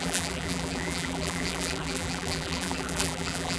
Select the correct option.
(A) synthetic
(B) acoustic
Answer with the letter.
A